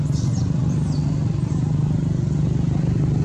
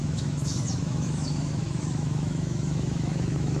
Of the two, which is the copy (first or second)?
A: second